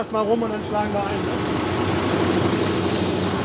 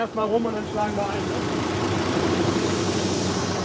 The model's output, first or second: second